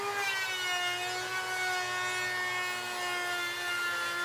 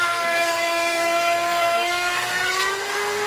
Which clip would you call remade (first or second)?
second